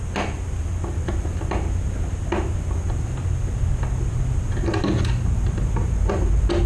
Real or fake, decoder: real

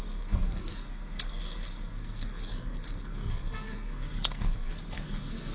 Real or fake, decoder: fake, codec, SNAC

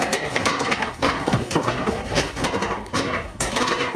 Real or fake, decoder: fake, codec, SNAC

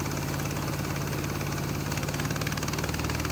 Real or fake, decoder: real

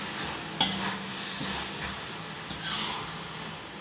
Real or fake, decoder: real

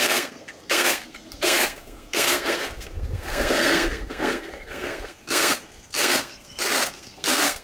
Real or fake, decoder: fake, codec, SNAC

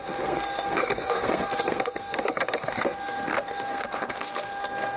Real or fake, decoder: fake, codec, SNAC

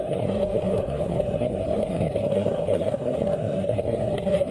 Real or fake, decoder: fake, codec, SNAC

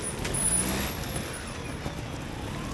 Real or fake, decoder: real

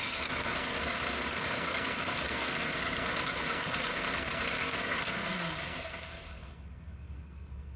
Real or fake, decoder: fake, codec, SNAC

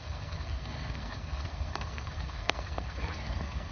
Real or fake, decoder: fake, codec, SNAC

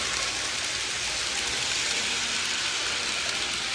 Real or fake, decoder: real